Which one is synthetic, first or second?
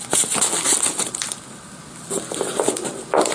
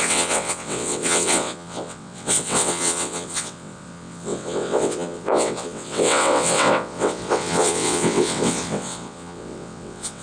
second